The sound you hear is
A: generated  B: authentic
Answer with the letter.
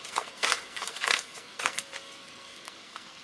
A